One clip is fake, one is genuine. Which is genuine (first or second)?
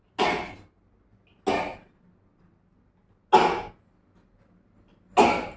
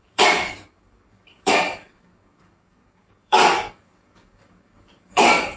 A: first